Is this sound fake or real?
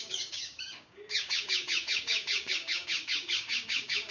fake